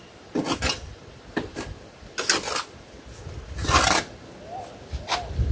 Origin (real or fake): real